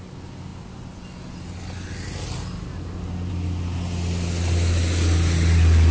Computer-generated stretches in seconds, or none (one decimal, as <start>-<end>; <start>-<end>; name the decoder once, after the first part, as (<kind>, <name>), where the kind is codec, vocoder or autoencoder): none